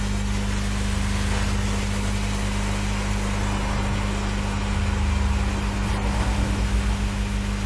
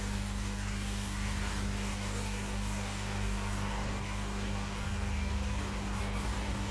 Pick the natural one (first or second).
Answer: first